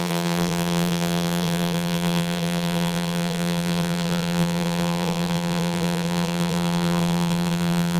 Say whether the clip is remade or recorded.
remade